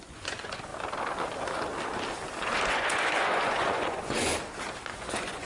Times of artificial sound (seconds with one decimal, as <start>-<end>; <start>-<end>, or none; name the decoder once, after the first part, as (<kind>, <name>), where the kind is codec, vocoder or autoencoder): 0.0-0.7 (vocoder, Vocos); 2.7-4.3; 4.9-5.5